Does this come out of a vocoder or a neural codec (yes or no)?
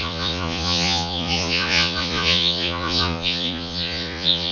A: yes